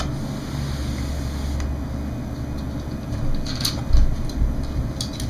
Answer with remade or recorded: recorded